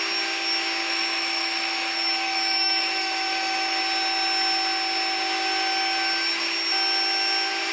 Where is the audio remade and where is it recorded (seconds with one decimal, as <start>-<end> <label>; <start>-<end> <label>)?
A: 0.0-0.8 recorded; 0.8-3.8 remade; 3.8-7.7 recorded